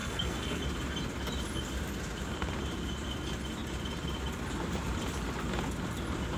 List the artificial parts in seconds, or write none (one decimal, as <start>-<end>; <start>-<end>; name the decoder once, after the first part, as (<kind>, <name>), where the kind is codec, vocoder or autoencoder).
0.0-0.6 (codec, SNAC)